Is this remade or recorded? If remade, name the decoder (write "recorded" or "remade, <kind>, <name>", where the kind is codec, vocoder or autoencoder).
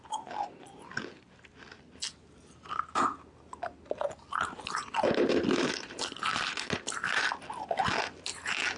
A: recorded